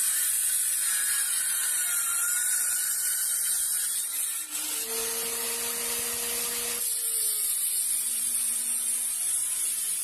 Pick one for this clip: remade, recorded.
recorded